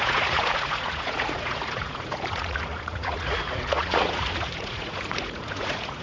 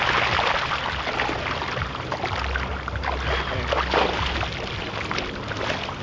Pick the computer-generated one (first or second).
first